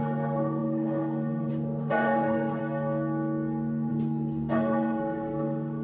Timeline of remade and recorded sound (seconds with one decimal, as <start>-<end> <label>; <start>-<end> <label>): 0.0-2.6 remade; 2.6-3.9 recorded; 3.9-5.8 remade